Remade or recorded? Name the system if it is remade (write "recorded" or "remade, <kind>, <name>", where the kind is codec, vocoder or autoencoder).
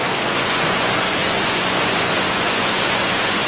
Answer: remade, vocoder, Vocos